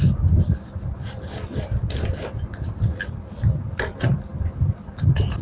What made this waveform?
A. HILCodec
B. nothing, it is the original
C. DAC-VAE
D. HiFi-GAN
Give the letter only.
B